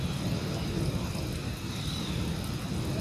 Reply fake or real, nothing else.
real